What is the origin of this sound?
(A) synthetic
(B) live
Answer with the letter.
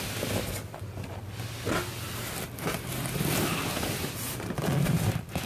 B